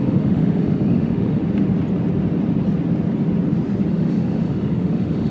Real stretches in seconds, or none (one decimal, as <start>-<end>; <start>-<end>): 1.4-3.9